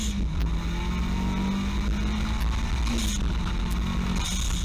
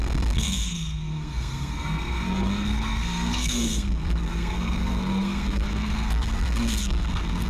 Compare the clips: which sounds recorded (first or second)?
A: first